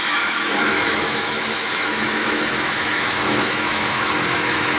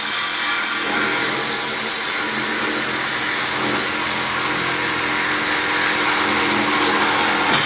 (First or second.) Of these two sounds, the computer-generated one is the first